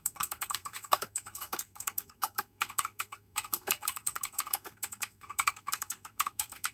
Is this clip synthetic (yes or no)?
yes